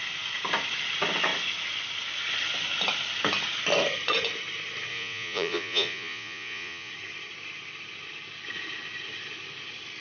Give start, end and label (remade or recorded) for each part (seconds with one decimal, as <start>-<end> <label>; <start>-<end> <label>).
0.0-4.9 recorded; 4.9-6.9 remade; 6.9-10.0 recorded